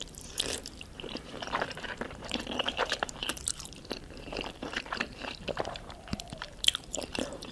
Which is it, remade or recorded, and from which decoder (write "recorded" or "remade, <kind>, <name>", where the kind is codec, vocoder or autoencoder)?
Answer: remade, vocoder, BigVGAN v2